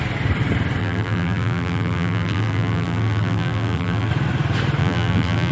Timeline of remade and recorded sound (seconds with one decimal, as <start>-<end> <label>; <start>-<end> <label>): 0.0-0.8 recorded; 0.8-4.1 remade; 4.1-4.8 recorded; 4.8-5.5 remade